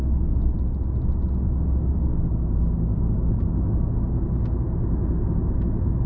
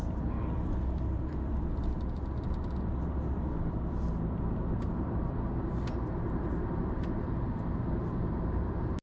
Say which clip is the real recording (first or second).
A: first